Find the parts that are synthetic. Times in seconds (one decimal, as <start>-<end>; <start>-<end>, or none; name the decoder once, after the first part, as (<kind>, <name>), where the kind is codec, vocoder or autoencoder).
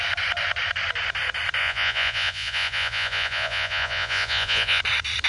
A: 1.6-4.8 (vocoder, Vocos)